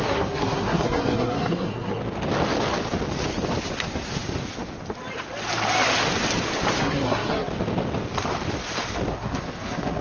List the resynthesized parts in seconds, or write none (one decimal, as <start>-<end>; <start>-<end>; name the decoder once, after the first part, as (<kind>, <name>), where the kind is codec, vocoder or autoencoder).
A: 0.0-2.0 (codec, SNAC); 6.8-7.5; 9.1-10.0